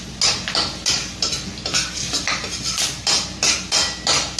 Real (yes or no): yes